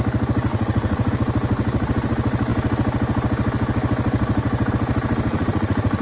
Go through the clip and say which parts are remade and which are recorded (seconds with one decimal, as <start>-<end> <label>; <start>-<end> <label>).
0.0-0.5 recorded; 0.5-1.1 remade; 1.1-5.3 recorded; 5.3-6.0 remade

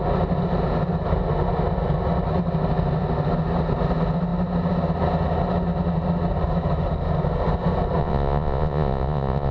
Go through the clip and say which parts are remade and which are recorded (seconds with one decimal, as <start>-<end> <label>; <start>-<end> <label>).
0.0-8.0 recorded; 8.0-9.5 remade

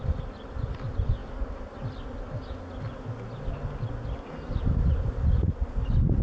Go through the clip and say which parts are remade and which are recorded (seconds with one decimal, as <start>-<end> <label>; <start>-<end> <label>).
0.0-6.2 recorded

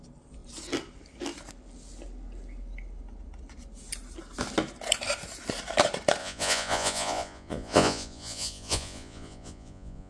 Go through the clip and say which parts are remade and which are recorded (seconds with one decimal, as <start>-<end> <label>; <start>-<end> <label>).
0.0-6.2 recorded; 6.2-10.1 remade

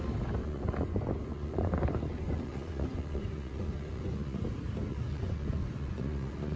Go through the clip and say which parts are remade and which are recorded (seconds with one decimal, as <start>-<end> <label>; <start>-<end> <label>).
0.0-0.4 recorded; 0.4-4.4 remade; 4.4-4.9 recorded; 4.9-6.6 remade

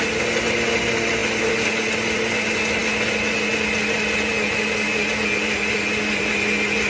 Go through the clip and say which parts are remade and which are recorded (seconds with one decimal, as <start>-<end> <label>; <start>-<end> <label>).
0.0-6.9 recorded